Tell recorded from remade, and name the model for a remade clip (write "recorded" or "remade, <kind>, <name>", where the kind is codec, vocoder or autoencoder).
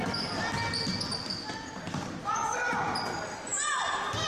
recorded